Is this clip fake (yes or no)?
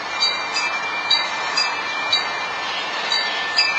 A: no